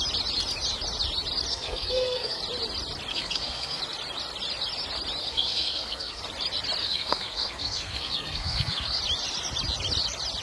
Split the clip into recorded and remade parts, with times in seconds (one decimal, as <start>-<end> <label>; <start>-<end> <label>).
0.0-1.5 recorded; 1.5-2.4 remade; 2.4-3.1 recorded; 3.1-3.8 remade; 3.8-5.2 recorded; 5.2-6.2 remade; 6.2-6.8 recorded; 6.8-9.0 remade; 9.0-10.4 recorded